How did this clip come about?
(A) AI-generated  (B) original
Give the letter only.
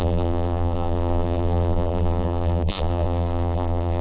A